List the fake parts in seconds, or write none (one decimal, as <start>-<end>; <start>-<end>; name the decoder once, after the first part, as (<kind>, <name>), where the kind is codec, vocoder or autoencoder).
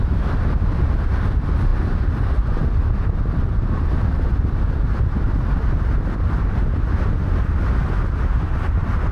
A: none